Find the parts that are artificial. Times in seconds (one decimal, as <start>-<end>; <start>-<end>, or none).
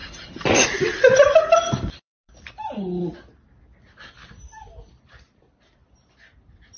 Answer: 0.0-2.5